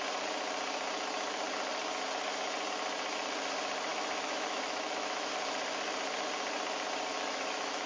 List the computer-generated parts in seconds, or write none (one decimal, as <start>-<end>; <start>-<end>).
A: 3.9-5.3; 7.1-7.9